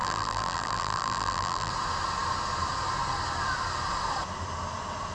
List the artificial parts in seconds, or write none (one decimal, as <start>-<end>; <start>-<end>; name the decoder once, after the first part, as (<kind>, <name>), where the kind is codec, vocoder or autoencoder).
0.0-1.7 (vocoder, BigVGAN v2)